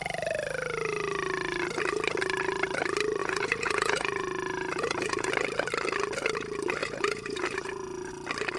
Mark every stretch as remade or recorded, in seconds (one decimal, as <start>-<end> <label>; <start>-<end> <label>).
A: 0.0-3.2 recorded; 3.2-5.3 remade; 5.3-6.8 recorded; 6.8-8.1 remade; 8.1-8.6 recorded